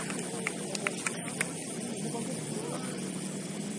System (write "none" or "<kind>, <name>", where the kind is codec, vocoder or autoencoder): none